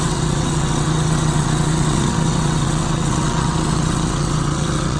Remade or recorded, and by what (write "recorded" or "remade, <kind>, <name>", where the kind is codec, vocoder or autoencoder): remade, vocoder, WaveNeXt